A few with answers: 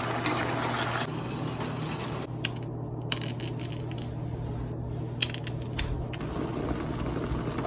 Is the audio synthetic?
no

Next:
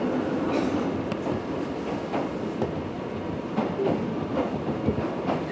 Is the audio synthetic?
no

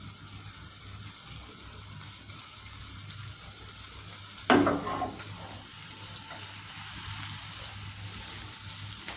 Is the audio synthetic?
no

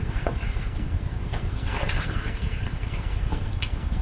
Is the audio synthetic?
yes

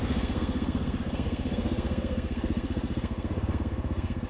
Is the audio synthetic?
yes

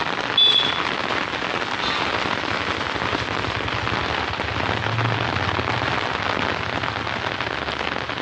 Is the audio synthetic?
no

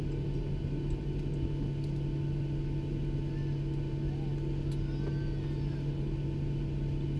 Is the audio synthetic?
no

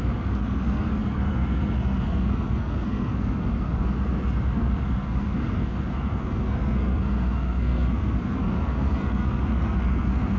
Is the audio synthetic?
yes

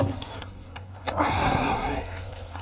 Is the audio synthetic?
yes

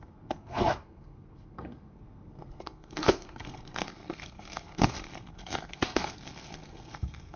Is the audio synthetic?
yes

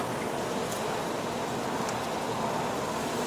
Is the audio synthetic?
no